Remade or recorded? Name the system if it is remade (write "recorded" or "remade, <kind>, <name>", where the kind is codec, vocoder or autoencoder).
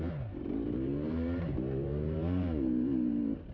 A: remade, vocoder, BigVGAN v2